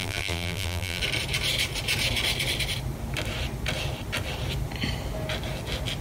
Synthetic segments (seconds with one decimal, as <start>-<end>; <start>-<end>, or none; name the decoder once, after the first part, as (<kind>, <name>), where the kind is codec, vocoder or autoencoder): 0.0-1.0 (vocoder, BigVGAN v2)